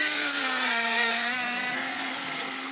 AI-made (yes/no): yes